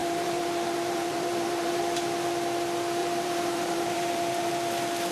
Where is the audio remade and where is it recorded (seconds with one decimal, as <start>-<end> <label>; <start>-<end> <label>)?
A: 0.0-1.8 remade; 1.8-3.0 recorded; 3.0-4.5 remade; 4.5-5.1 recorded